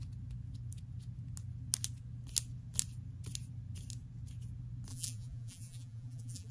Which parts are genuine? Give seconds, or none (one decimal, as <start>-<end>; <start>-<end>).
0.0-4.9